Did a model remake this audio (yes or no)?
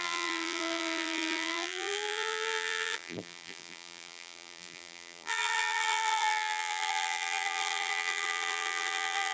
yes